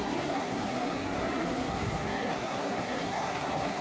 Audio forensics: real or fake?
fake